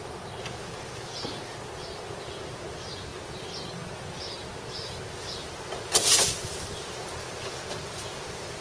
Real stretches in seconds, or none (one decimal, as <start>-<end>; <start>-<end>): 0.0-8.6